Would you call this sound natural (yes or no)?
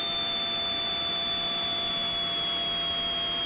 yes